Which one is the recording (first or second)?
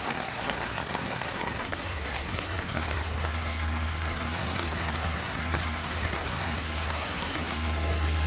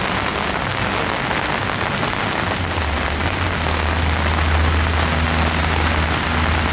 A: second